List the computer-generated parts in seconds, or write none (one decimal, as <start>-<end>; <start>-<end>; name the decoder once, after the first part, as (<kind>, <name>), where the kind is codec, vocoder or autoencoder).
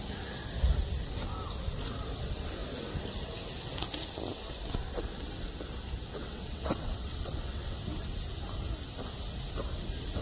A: 6.2-7.8 (vocoder, WaveNeXt)